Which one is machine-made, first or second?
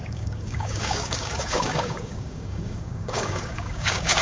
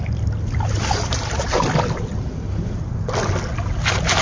first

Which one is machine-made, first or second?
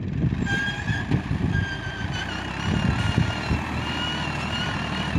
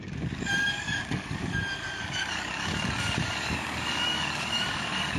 second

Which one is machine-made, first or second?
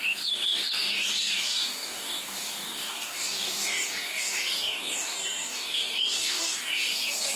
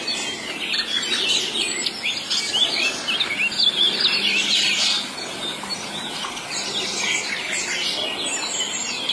first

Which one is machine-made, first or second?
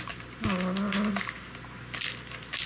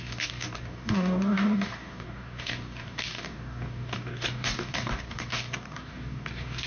second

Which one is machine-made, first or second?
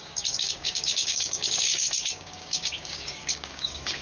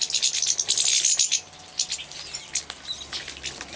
first